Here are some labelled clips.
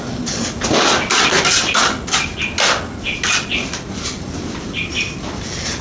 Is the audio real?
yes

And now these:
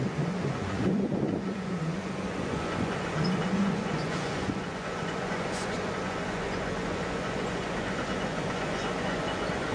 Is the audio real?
no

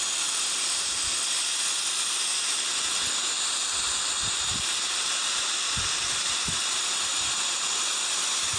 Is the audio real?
yes